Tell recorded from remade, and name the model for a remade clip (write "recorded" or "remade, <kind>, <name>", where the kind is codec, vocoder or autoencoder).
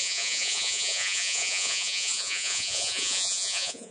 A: remade, vocoder, Vocos